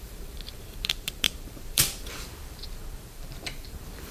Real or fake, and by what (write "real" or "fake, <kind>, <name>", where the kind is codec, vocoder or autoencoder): fake, vocoder, BigVGAN v2